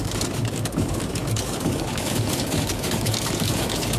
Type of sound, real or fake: fake